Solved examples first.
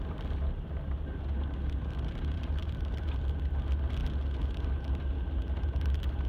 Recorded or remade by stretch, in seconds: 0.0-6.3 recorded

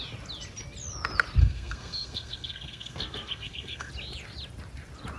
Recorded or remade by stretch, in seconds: 0.0-1.4 recorded; 1.4-3.9 remade; 3.9-5.2 recorded

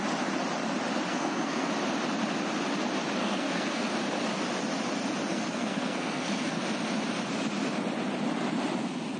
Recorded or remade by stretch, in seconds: 0.0-1.1 recorded; 1.1-1.7 remade; 1.7-3.2 recorded; 3.2-3.9 remade; 3.9-5.3 recorded; 5.3-6.6 remade; 6.6-9.2 recorded

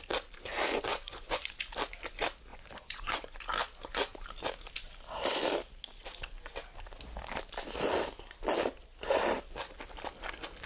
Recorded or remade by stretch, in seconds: 0.0-0.9 recorded; 0.9-1.5 remade; 1.5-2.5 recorded; 2.5-3.4 remade; 3.4-10.7 recorded

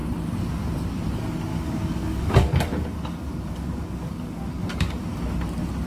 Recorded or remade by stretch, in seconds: 0.0-1.5 recorded; 1.5-5.0 remade; 5.0-5.9 recorded

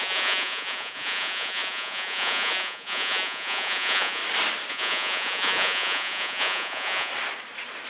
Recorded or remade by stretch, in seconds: 0.0-4.2 remade; 4.2-4.7 recorded; 4.7-7.1 remade; 7.1-7.9 recorded

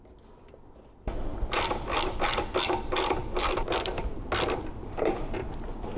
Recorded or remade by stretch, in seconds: 0.0-6.0 recorded